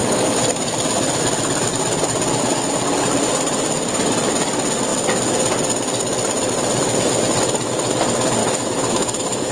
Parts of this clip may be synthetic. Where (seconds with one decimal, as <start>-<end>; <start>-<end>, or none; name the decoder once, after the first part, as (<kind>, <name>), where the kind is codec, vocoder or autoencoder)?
8.4-9.5 (autoencoder, DAC-VAE)